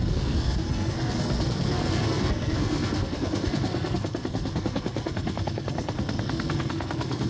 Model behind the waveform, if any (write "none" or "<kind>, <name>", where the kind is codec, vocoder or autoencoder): codec, SNAC